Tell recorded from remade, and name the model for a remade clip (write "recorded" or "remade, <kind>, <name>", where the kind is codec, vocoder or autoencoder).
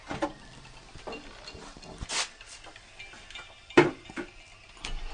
recorded